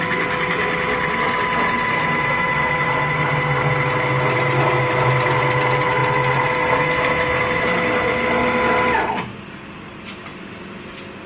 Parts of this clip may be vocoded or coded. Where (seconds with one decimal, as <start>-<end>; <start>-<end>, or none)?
none